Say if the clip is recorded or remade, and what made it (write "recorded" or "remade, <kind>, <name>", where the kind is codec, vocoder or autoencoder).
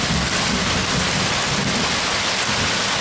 recorded